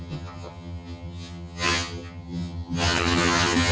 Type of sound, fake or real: fake